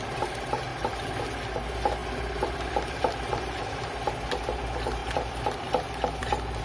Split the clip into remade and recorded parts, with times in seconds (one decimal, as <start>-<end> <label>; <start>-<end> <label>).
0.0-0.7 recorded; 0.7-1.6 remade; 1.6-2.0 recorded; 2.0-4.1 remade; 4.1-5.0 recorded; 5.0-6.6 remade